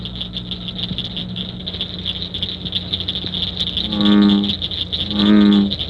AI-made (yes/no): no